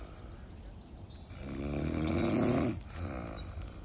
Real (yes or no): yes